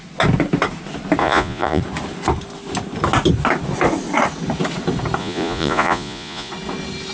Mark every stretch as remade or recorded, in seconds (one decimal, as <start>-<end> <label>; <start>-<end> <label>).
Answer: 0.0-1.2 recorded; 1.2-1.8 remade; 1.8-5.2 recorded; 5.2-6.5 remade; 6.5-7.1 recorded